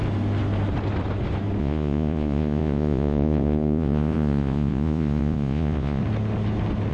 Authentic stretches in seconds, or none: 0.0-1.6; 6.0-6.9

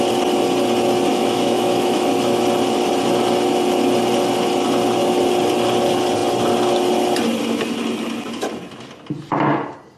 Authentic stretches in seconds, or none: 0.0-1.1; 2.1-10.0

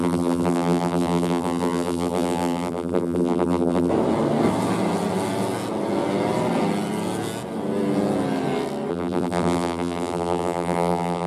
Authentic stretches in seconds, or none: 3.9-8.9

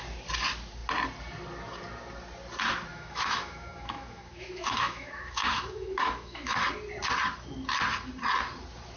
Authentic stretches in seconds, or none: 0.0-2.9; 6.6-9.0

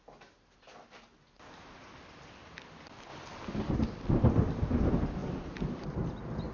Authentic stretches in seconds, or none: 0.0-6.5